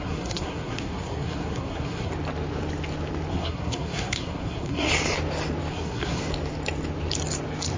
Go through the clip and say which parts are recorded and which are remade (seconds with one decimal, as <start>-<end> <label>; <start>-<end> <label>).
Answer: 0.0-2.1 remade; 2.1-3.3 recorded; 3.3-4.9 remade; 4.9-5.7 recorded; 5.7-6.2 remade; 6.2-7.8 recorded